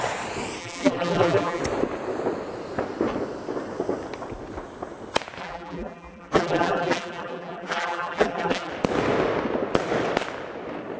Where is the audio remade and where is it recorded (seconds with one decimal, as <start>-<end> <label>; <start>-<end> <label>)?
0.0-0.6 recorded; 0.6-1.6 remade; 1.6-5.4 recorded; 5.4-8.7 remade; 8.7-11.0 recorded